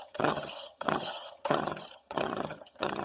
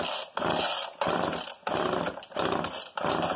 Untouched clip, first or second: second